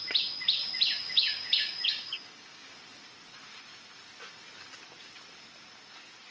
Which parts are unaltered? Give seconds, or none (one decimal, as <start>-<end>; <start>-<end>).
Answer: 0.0-1.0; 2.8-6.3